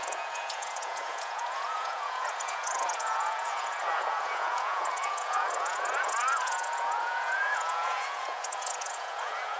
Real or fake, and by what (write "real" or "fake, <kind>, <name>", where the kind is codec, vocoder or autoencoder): fake, vocoder, Vocos